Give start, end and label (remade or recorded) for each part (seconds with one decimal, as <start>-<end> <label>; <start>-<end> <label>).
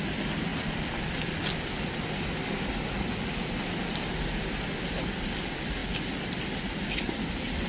0.0-7.7 recorded